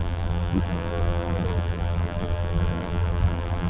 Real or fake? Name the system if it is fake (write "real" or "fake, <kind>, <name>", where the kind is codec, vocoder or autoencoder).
fake, vocoder, BigVGAN v2